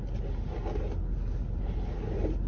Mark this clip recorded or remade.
recorded